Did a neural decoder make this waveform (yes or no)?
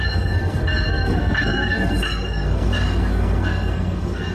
yes